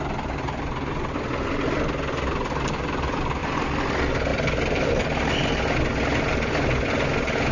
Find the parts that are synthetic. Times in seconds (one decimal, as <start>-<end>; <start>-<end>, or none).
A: 4.3-4.9